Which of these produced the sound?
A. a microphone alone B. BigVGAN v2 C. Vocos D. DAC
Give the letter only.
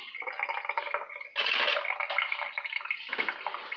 A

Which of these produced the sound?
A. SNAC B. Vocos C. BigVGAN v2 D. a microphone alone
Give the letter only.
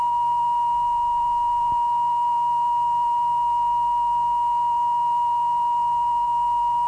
D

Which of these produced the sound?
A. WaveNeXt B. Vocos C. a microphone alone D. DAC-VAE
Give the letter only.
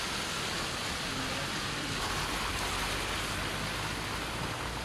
C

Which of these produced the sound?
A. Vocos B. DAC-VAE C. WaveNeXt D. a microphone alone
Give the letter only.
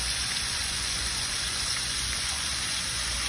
A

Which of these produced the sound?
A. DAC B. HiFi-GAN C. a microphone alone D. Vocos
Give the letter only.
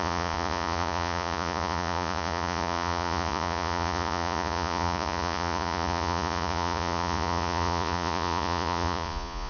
D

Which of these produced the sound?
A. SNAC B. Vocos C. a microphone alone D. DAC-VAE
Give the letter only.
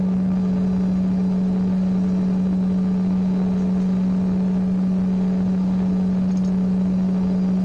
C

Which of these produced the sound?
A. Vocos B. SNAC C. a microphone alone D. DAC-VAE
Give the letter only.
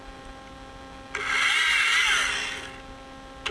C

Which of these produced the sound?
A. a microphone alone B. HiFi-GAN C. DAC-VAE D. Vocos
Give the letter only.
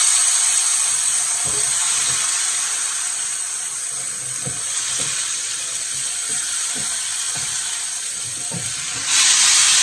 A